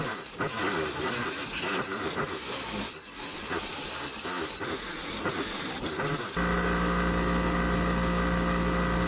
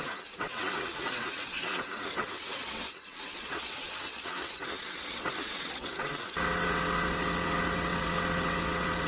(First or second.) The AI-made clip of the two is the second